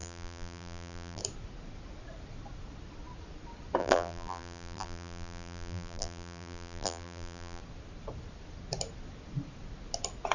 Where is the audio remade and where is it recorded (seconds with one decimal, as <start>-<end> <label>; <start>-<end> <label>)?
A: 0.0-1.2 remade; 1.2-3.8 recorded; 3.8-7.6 remade; 7.6-10.3 recorded